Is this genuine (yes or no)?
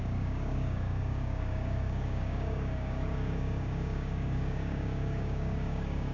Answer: no